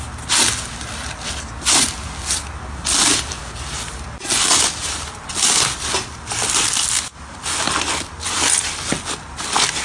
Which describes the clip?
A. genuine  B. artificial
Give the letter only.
A